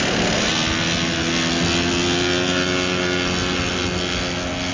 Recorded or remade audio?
recorded